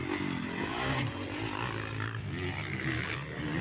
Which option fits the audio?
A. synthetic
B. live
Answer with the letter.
B